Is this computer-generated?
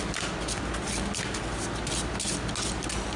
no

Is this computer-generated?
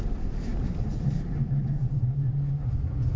no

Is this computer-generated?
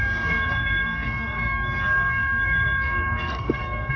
yes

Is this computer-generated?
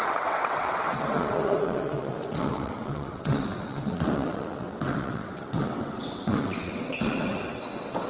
yes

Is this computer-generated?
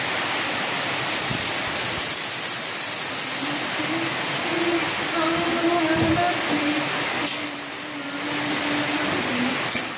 no